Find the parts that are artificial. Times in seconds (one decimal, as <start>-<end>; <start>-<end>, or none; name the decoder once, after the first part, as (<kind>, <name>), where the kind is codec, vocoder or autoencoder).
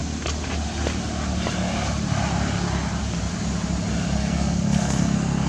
4.2-5.5 (codec, SNAC)